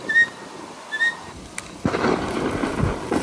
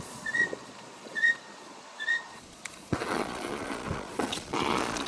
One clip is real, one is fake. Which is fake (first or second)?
second